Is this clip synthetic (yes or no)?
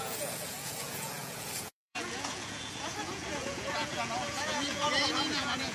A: yes